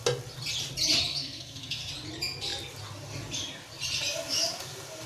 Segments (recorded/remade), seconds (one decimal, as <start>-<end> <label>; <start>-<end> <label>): 0.0-1.1 recorded; 1.1-1.9 remade; 1.9-5.1 recorded